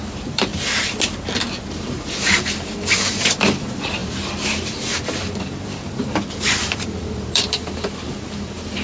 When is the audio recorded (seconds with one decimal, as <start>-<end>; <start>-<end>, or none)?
0.5-3.0